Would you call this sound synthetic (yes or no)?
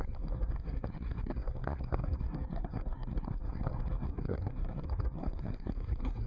yes